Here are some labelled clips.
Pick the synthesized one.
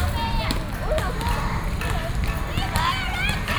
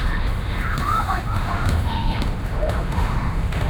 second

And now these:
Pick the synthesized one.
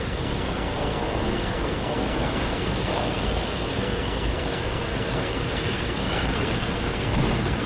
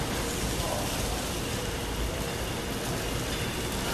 first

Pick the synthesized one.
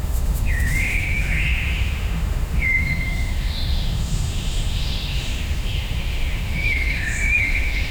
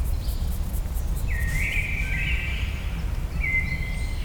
first